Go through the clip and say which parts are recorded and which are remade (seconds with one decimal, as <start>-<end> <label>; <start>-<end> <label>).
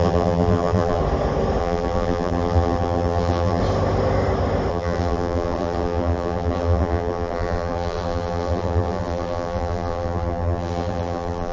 0.0-1.0 remade; 1.0-1.6 recorded; 1.6-3.6 remade; 3.6-4.7 recorded; 4.7-11.5 remade